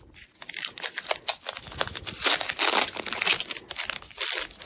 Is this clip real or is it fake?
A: real